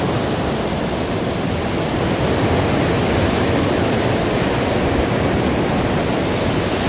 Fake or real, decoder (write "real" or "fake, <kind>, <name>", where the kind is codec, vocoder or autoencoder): real